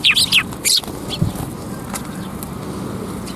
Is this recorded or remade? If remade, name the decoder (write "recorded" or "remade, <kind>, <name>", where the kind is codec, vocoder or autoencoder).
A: recorded